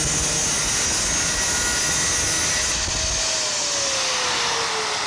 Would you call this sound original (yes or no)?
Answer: yes